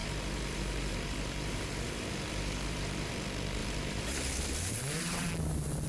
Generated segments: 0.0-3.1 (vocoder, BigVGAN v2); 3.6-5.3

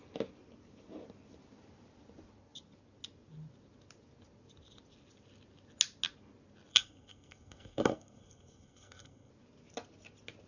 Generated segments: 6.7-9.3 (codec, SNAC)